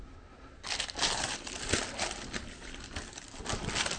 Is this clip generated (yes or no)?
no